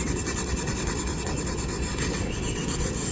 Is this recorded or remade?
remade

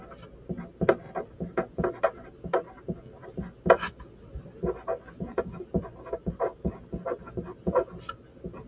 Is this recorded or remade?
recorded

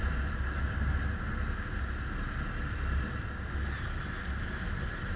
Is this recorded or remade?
recorded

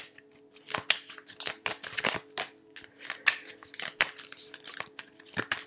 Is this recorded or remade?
recorded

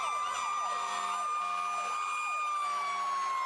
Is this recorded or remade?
recorded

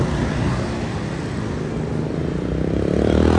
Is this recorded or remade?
recorded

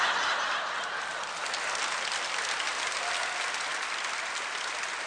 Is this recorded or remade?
recorded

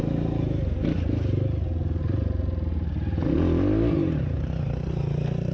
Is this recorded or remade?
recorded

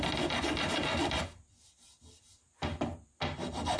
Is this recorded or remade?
recorded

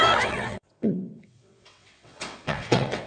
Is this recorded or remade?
remade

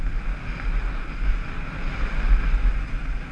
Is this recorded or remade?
recorded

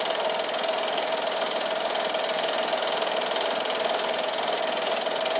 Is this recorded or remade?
recorded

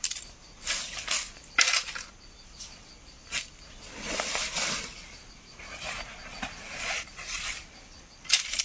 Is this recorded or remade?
recorded